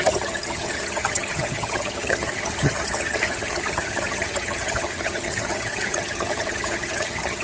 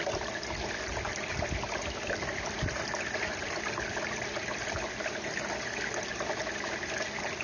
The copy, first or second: first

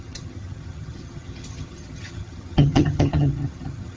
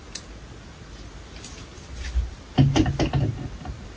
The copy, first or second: first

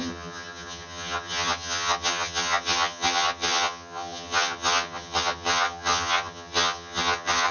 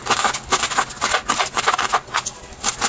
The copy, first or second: first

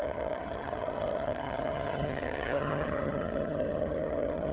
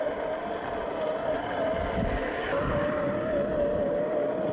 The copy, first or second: first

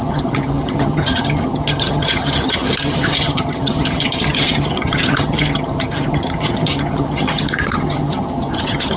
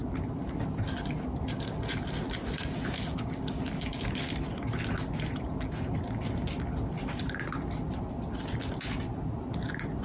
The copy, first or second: first